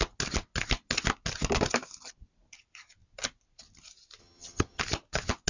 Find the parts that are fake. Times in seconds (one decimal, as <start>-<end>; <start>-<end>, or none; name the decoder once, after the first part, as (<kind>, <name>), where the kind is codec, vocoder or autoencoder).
4.2-4.8 (vocoder, HiFi-GAN)